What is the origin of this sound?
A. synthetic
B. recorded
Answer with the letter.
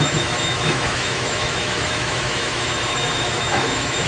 A